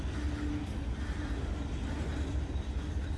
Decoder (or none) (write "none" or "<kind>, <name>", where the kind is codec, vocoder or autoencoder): none